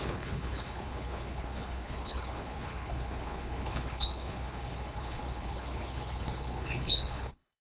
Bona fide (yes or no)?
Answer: no